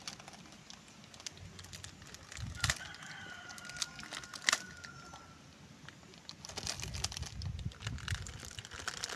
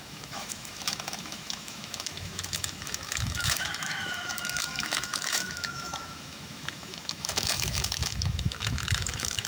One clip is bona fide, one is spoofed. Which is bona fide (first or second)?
first